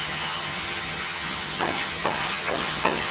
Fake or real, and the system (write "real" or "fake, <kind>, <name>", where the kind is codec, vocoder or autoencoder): fake, vocoder, HiFi-GAN